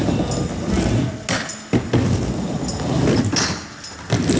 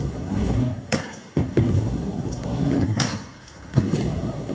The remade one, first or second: second